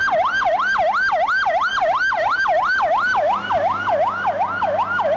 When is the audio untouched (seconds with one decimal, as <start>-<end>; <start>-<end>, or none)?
0.0-5.2